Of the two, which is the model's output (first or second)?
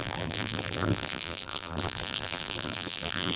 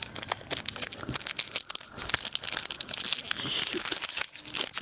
first